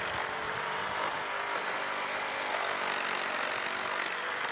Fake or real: fake